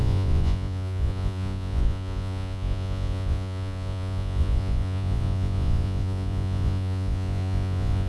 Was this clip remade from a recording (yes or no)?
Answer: yes